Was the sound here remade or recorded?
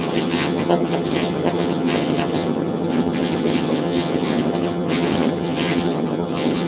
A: remade